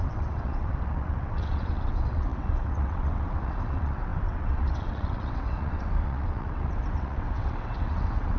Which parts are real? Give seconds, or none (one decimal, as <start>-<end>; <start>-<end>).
none

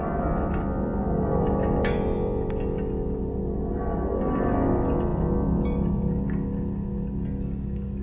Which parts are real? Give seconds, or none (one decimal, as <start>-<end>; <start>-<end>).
0.0-8.0

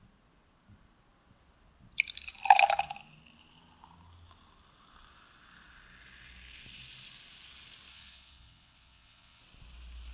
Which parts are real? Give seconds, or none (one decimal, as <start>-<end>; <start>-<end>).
0.0-7.9; 9.4-10.1